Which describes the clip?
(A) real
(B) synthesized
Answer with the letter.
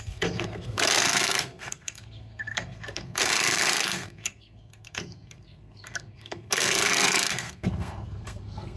B